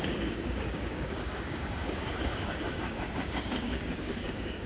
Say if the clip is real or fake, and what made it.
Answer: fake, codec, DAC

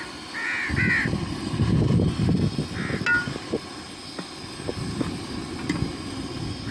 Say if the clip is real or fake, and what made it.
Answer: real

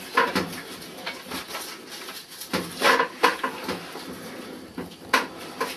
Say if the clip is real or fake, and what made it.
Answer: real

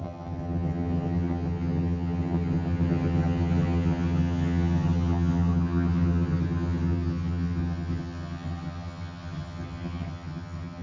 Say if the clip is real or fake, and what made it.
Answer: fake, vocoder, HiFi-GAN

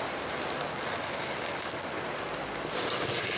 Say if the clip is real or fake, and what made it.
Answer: real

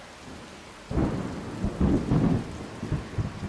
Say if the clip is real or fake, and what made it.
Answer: real